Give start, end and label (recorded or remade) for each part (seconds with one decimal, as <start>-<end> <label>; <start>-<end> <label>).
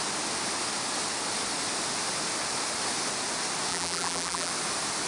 0.0-3.7 recorded; 3.7-4.5 remade; 4.5-5.1 recorded